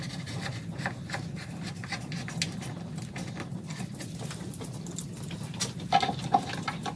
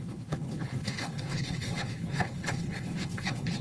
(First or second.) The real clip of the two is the first